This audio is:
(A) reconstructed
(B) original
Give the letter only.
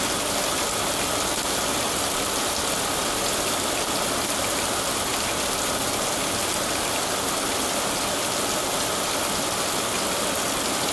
B